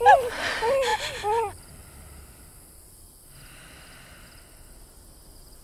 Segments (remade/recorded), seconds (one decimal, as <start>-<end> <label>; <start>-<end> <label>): 0.0-5.6 recorded